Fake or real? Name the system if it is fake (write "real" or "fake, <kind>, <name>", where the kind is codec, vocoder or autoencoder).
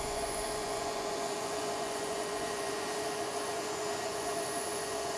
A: fake, vocoder, Vocos